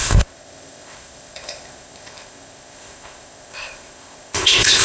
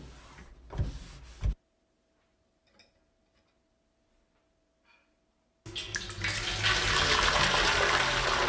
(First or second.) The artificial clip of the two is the first